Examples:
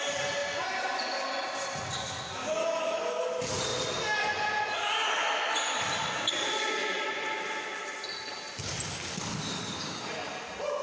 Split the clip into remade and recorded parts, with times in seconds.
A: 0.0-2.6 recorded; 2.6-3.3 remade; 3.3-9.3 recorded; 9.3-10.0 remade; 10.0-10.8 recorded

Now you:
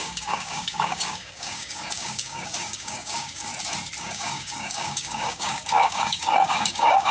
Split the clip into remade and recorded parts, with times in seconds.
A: 0.0-3.5 remade; 3.5-4.0 recorded; 4.0-7.1 remade

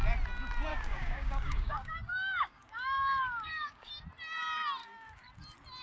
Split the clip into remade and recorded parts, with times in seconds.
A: 0.0-0.7 recorded; 0.7-3.9 remade; 3.9-4.8 recorded; 4.8-5.3 remade; 5.3-5.8 recorded

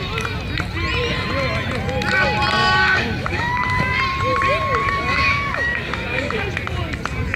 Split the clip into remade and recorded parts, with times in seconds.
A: 0.0-2.6 recorded; 2.6-4.0 remade; 4.0-4.8 recorded; 4.8-6.4 remade; 6.4-7.4 recorded

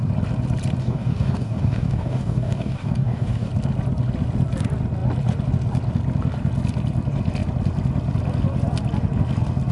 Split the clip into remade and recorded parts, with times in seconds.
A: 0.0-0.8 recorded; 0.8-3.5 remade; 3.5-9.7 recorded